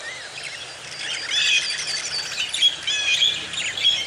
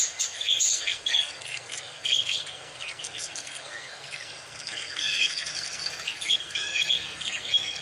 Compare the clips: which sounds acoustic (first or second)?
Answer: first